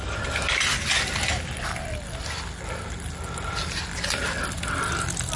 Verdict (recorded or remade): recorded